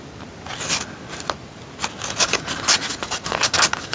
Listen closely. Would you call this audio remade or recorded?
recorded